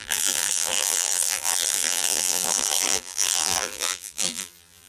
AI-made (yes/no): yes